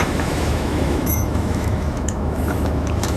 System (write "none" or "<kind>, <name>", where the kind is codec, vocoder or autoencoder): autoencoder, DAC-VAE